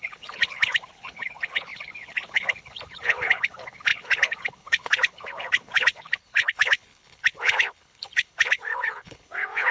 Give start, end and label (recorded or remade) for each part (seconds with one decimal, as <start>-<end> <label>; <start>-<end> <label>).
0.0-9.7 remade